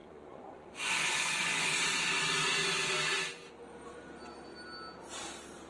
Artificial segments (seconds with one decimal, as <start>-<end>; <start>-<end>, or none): 0.0-1.7

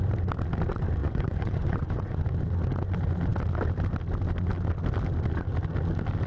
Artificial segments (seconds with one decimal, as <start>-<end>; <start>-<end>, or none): 1.0-2.2

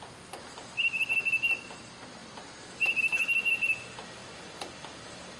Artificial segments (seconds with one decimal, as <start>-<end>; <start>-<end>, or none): 4.2-4.8

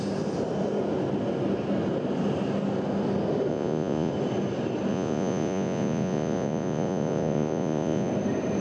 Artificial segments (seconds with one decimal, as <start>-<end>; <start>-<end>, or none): 3.5-4.1; 4.9-8.1

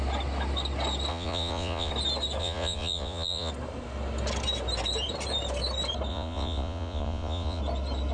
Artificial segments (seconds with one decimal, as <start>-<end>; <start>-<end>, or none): 1.1-1.9; 2.4-3.5; 6.1-7.6

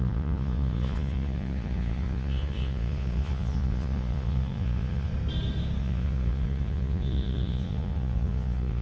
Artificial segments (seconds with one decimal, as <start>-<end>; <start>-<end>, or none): 0.0-5.1; 5.8-8.8

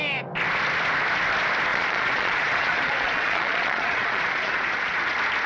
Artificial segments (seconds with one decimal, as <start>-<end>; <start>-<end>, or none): 1.7-5.0